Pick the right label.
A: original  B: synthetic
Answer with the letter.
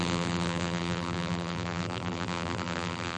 B